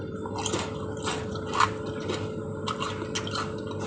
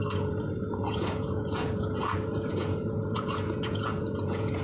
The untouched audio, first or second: first